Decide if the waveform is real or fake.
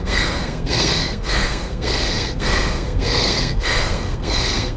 fake